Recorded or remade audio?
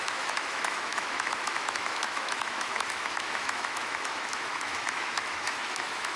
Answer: remade